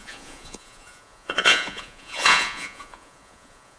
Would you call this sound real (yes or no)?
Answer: no